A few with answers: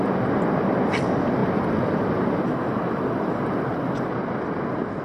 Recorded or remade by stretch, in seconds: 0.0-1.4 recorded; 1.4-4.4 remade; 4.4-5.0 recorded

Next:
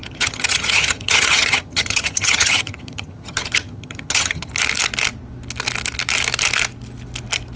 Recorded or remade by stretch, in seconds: 0.0-4.5 remade; 4.5-7.6 recorded

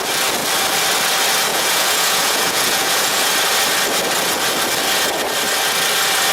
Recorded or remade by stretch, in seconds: 0.0-1.5 recorded; 1.5-3.3 remade; 3.3-6.3 recorded

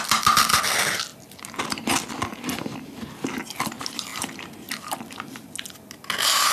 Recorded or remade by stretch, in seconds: 0.0-6.5 recorded

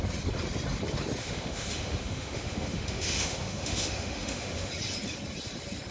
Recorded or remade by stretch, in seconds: 0.0-1.2 recorded; 1.2-4.7 remade; 4.7-5.9 recorded

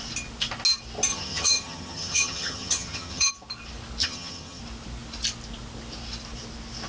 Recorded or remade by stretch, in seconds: 0.0-1.1 recorded; 1.1-3.3 remade; 3.3-4.0 recorded; 4.0-4.6 remade; 4.6-6.9 recorded